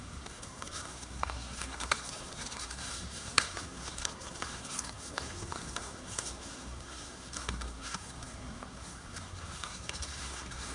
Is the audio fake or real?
fake